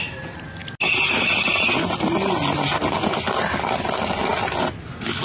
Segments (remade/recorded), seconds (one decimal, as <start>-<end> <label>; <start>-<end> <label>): 0.0-5.2 recorded